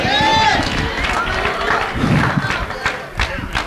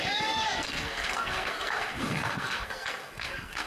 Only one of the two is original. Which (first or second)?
first